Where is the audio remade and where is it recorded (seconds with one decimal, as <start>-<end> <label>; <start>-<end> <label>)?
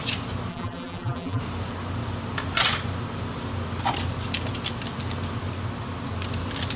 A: 0.0-0.5 recorded; 0.5-1.4 remade; 1.4-6.8 recorded